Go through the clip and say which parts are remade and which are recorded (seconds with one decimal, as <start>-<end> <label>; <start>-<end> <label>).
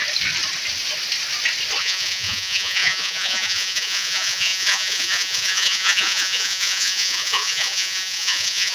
0.0-1.8 recorded; 1.8-8.7 remade